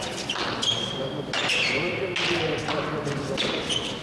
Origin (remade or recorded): recorded